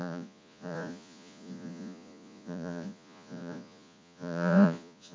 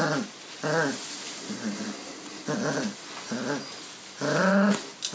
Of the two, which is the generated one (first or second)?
first